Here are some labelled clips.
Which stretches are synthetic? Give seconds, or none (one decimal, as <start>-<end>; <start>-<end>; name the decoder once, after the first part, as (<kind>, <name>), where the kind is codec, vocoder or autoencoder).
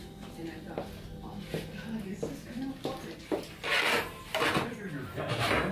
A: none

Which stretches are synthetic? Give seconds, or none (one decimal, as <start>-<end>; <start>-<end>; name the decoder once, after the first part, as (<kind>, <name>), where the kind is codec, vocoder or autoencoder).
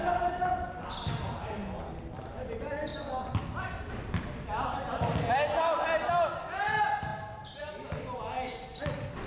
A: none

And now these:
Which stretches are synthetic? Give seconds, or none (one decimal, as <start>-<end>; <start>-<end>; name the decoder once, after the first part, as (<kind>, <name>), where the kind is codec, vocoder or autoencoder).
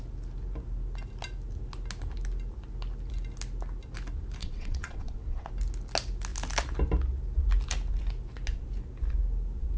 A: 4.4-5.5 (vocoder, WaveNeXt)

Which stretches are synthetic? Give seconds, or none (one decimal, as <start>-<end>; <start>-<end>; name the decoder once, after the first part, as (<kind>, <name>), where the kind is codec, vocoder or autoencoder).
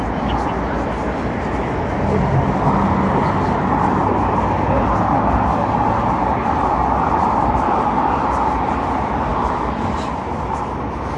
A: none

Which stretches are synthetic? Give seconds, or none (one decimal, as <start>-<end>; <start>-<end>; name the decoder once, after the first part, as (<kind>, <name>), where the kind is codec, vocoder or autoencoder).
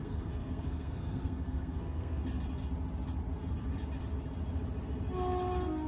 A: 0.0-2.2 (codec, SNAC)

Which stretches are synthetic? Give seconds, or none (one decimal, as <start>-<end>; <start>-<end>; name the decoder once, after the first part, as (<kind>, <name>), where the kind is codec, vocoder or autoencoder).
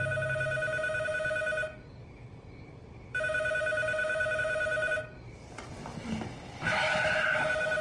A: 3.6-7.8 (vocoder, BigVGAN v2)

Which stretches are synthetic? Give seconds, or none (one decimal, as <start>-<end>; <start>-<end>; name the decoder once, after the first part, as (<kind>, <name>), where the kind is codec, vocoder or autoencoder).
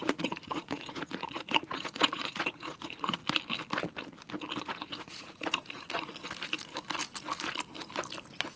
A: 0.0-3.2 (vocoder, Vocos); 4.6-6.1